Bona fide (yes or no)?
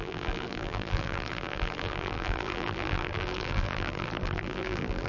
no